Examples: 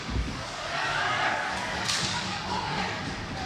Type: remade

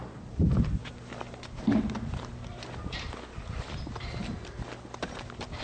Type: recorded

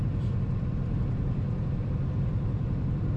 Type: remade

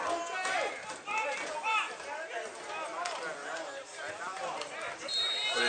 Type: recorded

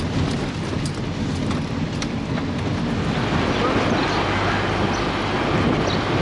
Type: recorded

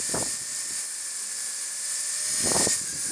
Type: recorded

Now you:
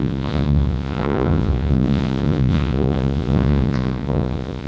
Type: remade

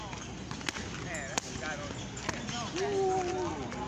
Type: recorded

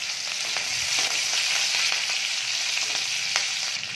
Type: recorded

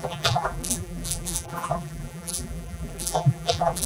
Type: remade